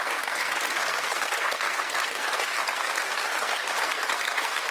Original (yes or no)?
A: no